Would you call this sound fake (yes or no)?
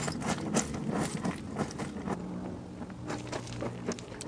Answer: no